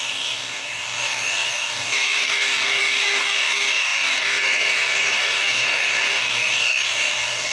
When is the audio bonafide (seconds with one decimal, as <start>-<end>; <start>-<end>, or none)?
none